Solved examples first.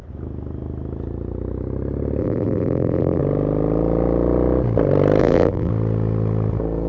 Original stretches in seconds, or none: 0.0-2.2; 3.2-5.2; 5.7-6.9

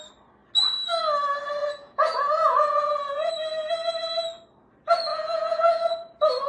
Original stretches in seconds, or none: 0.0-1.6; 3.3-5.1; 5.8-6.5